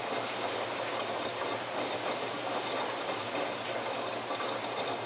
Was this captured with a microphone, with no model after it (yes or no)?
yes